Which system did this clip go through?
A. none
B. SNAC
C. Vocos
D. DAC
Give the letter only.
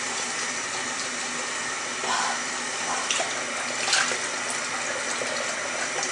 A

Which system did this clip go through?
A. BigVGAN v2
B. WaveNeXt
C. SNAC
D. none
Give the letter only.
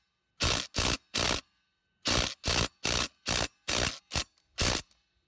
D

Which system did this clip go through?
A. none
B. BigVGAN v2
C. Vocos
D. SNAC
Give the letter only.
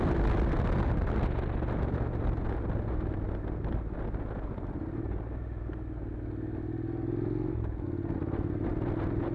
A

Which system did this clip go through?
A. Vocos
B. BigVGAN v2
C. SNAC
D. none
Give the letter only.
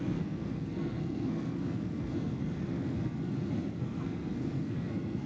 C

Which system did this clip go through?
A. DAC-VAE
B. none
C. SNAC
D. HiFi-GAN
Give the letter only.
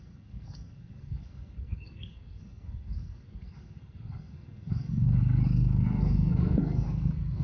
C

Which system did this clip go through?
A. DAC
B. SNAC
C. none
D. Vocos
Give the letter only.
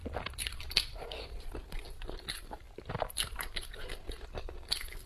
C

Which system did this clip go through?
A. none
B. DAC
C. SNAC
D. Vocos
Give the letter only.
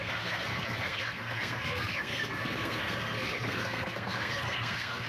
C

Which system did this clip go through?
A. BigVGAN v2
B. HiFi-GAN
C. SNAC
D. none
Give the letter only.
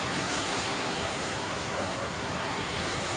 C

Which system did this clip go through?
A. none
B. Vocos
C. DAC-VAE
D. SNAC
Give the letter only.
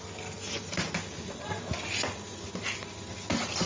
A